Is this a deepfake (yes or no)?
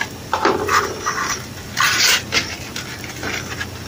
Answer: no